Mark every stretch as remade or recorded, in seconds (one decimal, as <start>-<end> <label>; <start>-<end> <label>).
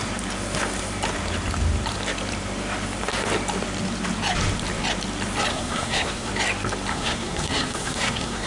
0.0-5.5 recorded; 5.5-6.3 remade; 6.3-6.9 recorded; 6.9-8.5 remade